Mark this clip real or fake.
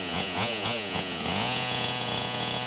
fake